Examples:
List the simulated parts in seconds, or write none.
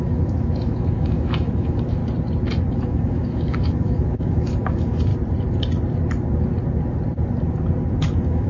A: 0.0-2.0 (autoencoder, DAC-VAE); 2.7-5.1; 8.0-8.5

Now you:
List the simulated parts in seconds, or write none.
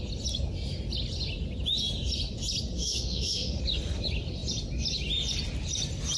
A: 2.8-3.6 (autoencoder, DAC-VAE)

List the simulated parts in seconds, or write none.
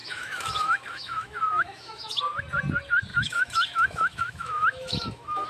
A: 0.0-2.2 (autoencoder, DAC-VAE); 3.1-5.5